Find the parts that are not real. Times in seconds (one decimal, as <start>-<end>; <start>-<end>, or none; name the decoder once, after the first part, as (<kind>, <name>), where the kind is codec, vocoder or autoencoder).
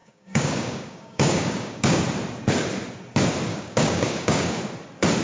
0.0-2.0 (codec, DAC); 3.5-4.6